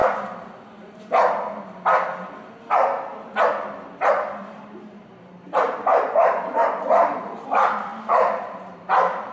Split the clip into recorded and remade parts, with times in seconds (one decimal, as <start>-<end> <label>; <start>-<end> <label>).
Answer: 0.0-4.4 recorded; 4.4-9.3 remade